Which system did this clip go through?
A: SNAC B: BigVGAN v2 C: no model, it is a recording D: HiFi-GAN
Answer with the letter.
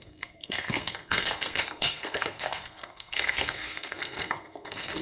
A